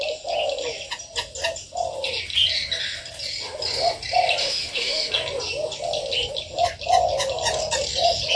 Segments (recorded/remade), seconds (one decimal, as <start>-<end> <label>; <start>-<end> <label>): 0.0-4.4 recorded; 4.4-5.1 remade; 5.1-8.4 recorded